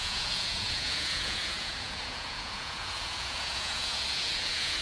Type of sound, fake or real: fake